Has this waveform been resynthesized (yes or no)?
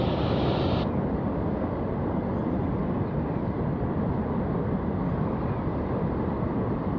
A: yes